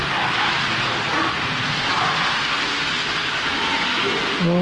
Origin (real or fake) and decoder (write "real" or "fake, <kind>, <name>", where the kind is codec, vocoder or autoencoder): real